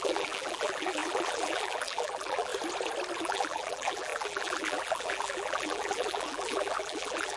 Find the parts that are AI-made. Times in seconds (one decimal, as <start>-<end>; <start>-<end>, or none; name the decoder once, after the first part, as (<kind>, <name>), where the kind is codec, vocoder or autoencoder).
0.0-2.5 (vocoder, BigVGAN v2); 3.2-7.4